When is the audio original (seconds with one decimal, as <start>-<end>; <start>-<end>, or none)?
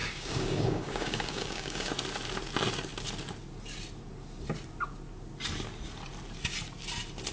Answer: 1.9-7.3